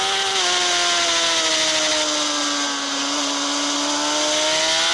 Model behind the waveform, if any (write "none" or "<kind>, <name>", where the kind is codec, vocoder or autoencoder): none